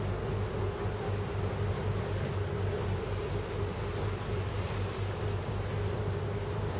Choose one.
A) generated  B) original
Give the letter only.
B